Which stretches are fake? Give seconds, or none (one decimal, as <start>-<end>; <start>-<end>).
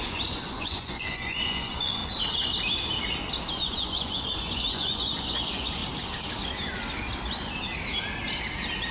0.0-2.0; 3.5-5.8